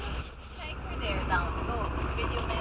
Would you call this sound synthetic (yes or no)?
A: no